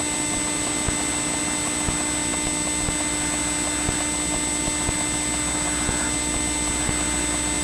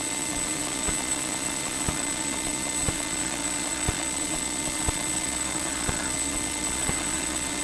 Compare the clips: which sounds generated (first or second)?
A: second